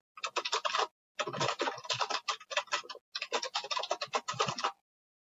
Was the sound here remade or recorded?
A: recorded